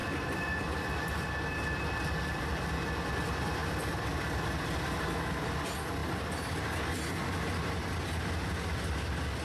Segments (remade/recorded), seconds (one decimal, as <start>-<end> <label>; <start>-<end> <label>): 0.0-2.8 remade; 2.8-3.6 recorded; 3.6-5.0 remade; 5.0-9.4 recorded